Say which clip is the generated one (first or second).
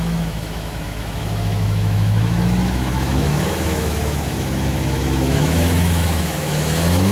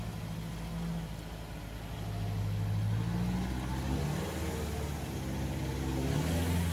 first